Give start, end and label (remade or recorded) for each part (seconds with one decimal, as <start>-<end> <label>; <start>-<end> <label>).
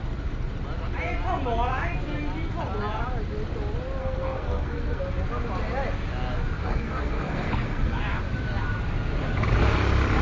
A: 0.0-4.0 recorded; 4.0-5.0 remade; 5.0-6.6 recorded; 6.6-8.0 remade; 8.0-10.2 recorded